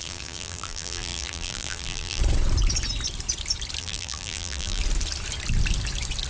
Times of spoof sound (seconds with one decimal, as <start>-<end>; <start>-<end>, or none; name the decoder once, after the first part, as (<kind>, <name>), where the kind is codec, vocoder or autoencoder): 0.0-2.2 (vocoder, BigVGAN v2); 3.8-4.8